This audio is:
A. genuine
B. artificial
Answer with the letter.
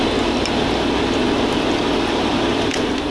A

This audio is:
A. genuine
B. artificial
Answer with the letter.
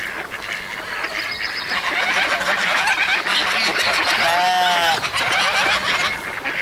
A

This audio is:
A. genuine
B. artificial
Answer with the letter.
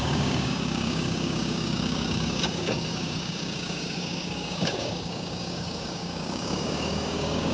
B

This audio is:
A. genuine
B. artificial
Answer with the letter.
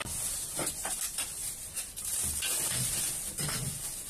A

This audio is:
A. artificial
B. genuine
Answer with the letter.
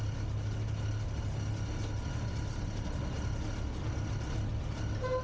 B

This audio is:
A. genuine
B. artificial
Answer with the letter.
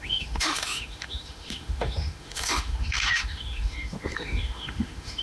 B